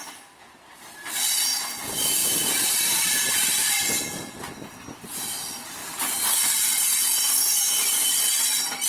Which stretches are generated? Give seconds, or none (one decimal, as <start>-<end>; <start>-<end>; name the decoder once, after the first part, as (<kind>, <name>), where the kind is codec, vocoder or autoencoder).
2.2-3.7 (vocoder, BigVGAN v2)